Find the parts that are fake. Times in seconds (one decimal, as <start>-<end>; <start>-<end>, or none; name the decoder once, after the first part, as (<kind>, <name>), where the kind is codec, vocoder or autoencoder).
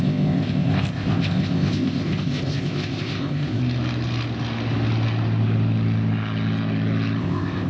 0.0-3.6 (codec, ZipCodec); 7.2-7.7